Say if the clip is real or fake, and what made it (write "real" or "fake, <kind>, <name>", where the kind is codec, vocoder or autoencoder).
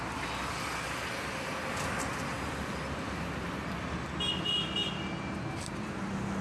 real